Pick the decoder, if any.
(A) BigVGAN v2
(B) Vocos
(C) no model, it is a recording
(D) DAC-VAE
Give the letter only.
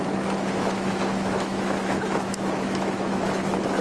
D